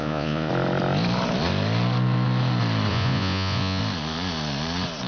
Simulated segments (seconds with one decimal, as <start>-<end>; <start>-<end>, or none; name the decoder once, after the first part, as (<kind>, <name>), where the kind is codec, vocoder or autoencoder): 0.0-0.5 (vocoder, Vocos); 2.9-3.8